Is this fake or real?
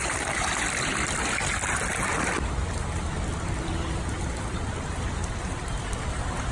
real